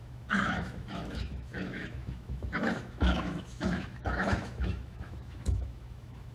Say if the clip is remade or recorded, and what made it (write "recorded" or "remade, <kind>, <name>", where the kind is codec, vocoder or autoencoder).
remade, autoencoder, DAC-VAE